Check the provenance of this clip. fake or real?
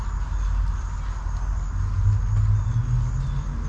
real